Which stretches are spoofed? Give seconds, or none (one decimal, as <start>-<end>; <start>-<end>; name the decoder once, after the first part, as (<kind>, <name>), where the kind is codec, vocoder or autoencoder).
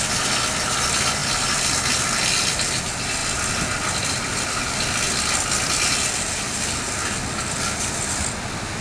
none